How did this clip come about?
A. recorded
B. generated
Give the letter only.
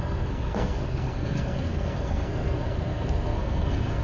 B